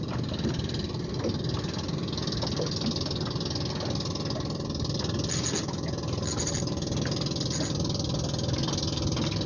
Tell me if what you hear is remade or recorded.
recorded